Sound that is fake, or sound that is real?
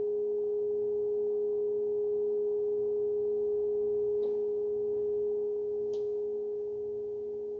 real